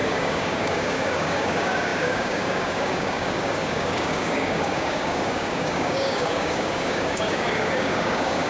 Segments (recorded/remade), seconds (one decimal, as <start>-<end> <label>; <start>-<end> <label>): 0.0-8.5 remade